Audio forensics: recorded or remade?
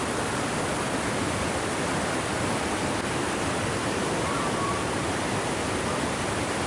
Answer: recorded